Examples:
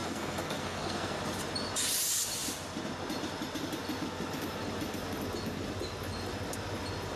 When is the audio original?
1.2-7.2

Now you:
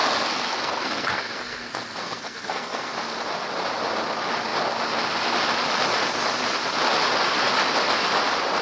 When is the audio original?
2.9-8.6

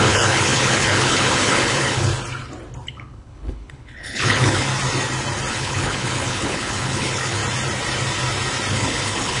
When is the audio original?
2.1-2.9; 4.7-5.5; 7.4-8.7

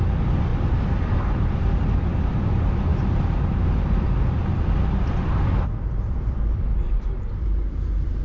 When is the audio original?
none

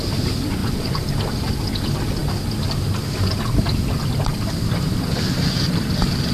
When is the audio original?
0.0-0.6; 1.5-6.3

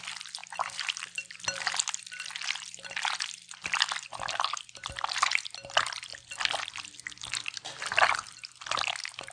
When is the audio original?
0.0-9.3

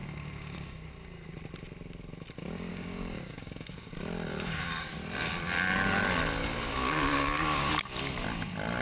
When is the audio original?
0.9-2.7; 3.9-4.3; 4.9-6.4; 7.7-8.8

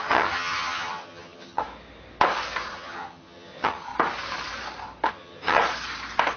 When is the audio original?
1.6-2.7; 3.9-5.1; 5.6-6.4